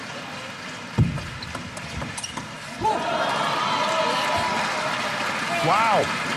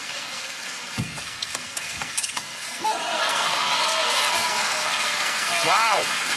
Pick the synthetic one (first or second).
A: second